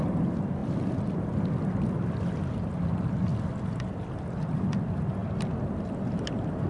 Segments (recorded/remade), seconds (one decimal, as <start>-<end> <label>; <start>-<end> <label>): 0.0-6.7 recorded